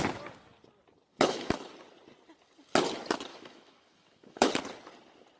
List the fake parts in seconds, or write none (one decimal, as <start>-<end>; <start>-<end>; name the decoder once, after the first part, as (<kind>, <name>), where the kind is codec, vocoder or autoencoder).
1.1-1.7 (autoencoder, DAC-VAE); 3.3-4.5